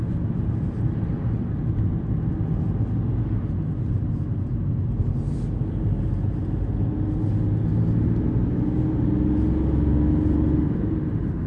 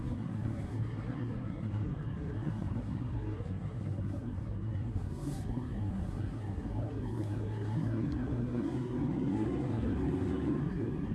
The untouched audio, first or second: first